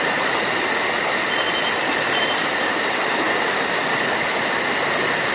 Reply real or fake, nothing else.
real